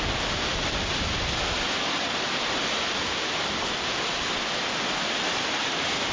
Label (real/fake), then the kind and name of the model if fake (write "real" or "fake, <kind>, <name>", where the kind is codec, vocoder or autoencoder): real